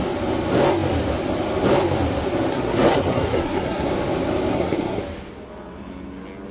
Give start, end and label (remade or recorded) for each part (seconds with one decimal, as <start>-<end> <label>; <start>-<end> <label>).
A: 0.0-2.5 recorded; 2.5-3.9 remade; 3.9-4.5 recorded; 4.5-5.0 remade; 5.0-6.5 recorded